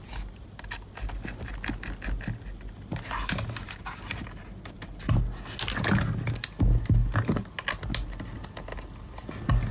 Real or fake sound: real